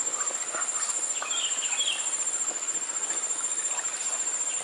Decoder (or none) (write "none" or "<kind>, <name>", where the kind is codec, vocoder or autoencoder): none